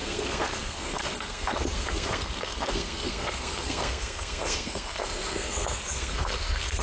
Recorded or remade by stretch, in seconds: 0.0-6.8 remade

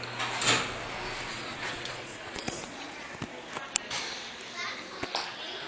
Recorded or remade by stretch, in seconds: 0.0-1.3 recorded; 1.3-3.1 remade; 3.1-5.7 recorded